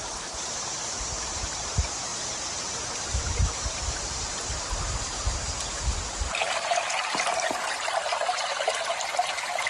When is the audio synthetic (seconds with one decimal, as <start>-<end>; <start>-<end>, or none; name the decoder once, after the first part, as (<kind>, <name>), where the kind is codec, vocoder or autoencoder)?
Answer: 0.0-2.1 (vocoder, BigVGAN v2); 2.8-8.5